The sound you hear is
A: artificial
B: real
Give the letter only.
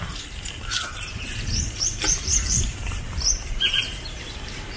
A